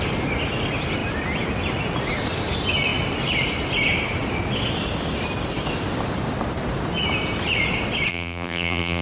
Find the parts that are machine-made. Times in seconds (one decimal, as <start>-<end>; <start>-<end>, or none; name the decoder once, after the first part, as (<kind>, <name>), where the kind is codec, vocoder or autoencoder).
8.1-9.0 (vocoder, BigVGAN v2)